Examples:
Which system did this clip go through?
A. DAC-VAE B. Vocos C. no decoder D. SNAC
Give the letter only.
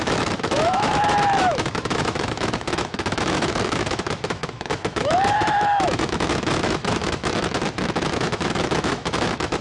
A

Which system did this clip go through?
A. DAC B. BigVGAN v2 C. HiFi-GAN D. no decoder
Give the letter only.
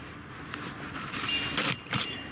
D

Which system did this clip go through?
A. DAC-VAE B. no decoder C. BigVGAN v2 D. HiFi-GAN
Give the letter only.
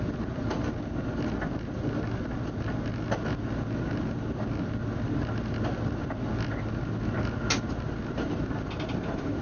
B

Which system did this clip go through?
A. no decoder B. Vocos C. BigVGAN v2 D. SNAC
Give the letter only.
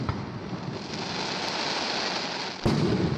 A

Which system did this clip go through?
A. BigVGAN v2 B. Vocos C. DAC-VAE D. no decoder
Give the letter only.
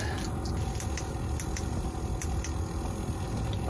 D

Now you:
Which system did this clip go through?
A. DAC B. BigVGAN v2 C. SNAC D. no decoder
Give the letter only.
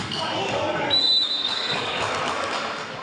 A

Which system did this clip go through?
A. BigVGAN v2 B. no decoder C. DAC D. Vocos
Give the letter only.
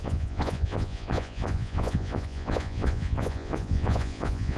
D